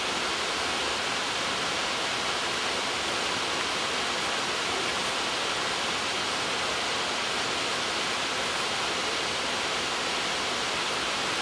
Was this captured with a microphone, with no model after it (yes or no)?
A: yes